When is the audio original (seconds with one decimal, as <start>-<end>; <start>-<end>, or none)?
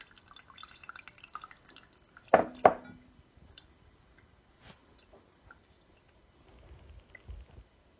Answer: 0.0-8.0